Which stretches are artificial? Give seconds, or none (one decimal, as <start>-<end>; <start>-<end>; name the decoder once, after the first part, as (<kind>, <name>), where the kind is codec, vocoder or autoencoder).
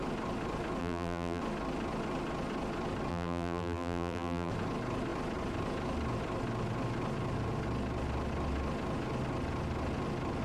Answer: 0.8-1.4 (vocoder, BigVGAN v2); 3.1-4.5